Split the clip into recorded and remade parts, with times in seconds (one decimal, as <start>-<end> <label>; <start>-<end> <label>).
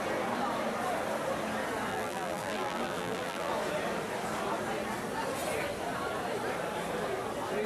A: 0.0-1.9 recorded; 1.9-3.5 remade; 3.5-7.7 recorded